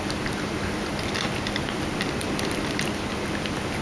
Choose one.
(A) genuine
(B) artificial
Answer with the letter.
A